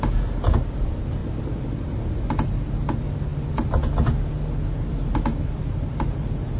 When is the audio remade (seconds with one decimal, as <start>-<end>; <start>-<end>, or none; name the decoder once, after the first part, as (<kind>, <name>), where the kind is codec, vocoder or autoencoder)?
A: none